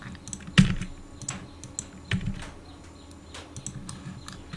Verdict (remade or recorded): recorded